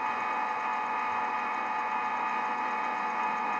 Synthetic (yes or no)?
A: yes